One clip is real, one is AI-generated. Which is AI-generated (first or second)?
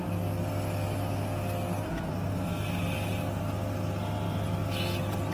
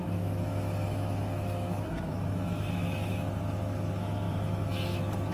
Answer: second